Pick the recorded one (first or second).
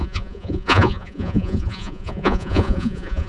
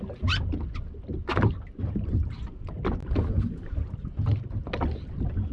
second